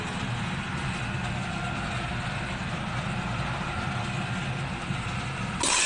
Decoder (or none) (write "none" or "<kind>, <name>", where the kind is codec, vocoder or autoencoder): none